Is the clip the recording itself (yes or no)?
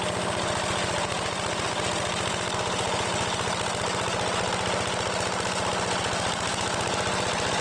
yes